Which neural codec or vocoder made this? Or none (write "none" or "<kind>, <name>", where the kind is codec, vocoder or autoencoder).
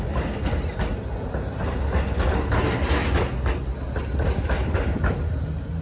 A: none